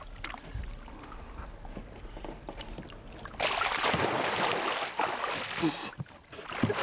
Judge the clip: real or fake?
real